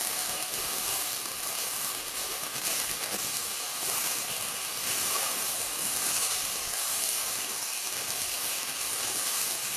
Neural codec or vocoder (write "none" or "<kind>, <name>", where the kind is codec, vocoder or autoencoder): codec, DAC